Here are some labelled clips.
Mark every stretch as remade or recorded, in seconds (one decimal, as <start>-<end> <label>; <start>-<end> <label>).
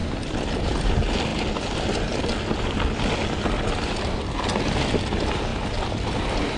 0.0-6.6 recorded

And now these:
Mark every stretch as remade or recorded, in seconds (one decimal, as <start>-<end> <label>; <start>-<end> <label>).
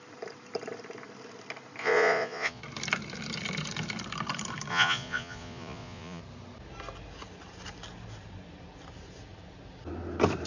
0.0-1.8 recorded; 1.8-2.6 remade; 2.6-4.7 recorded; 4.7-6.2 remade; 6.2-10.5 recorded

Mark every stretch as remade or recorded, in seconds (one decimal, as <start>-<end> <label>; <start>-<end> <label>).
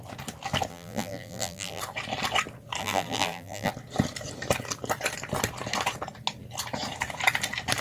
0.0-0.7 recorded; 0.7-1.8 remade; 1.8-2.8 recorded; 2.8-3.7 remade; 3.7-7.8 recorded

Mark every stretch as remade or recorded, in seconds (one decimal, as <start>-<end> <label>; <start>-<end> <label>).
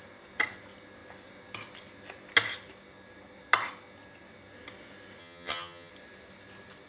0.0-5.2 recorded; 5.2-5.9 remade; 5.9-6.9 recorded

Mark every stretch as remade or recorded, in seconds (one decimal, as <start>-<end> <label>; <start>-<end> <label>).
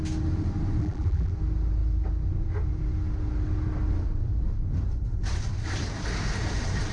0.0-0.8 recorded; 0.8-1.3 remade; 1.3-6.9 recorded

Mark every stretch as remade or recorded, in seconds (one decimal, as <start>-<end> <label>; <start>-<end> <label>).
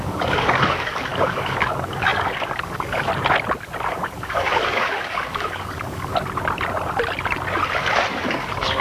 0.0-3.1 remade; 3.1-3.9 recorded; 3.9-6.1 remade; 6.1-8.1 recorded; 8.1-8.8 remade